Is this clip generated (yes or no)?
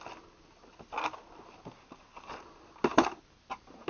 no